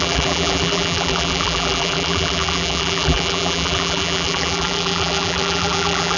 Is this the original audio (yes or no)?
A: no